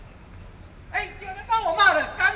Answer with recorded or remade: recorded